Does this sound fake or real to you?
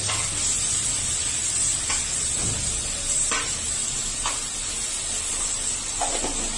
real